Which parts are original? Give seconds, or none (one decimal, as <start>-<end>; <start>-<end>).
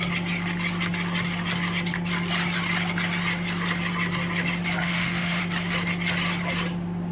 0.0-4.8; 5.4-7.1